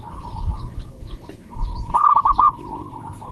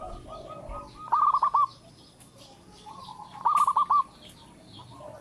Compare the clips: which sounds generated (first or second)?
first